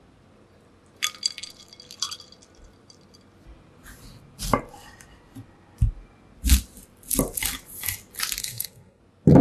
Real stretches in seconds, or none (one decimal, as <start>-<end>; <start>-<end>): 0.0-8.4; 9.0-9.4